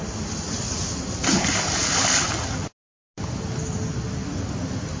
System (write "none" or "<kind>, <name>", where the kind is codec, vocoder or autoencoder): none